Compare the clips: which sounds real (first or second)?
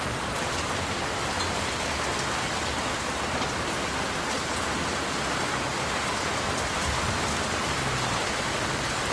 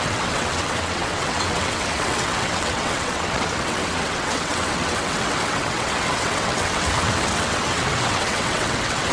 first